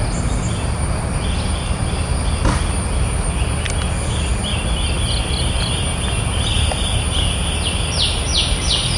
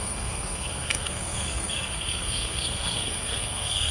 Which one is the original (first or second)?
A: first